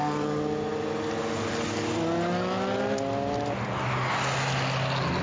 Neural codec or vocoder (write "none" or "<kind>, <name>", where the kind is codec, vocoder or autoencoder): none